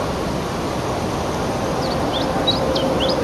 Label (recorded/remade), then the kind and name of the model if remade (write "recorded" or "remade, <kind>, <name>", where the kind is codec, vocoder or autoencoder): recorded